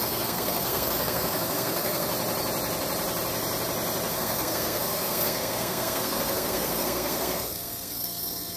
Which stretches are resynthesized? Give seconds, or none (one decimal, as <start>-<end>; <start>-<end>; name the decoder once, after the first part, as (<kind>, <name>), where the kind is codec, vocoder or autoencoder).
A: 0.0-2.1 (codec, SNAC); 4.1-8.6